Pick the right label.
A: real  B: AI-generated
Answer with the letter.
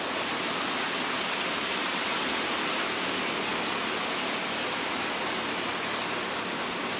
A